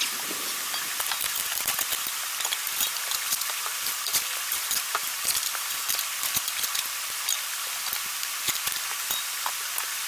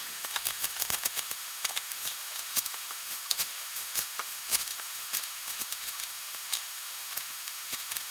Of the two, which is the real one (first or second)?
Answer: first